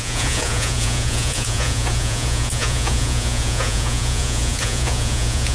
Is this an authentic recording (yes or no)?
no